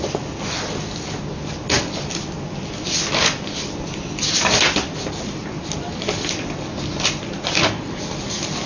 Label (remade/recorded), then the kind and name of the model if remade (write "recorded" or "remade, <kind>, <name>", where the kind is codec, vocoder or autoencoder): recorded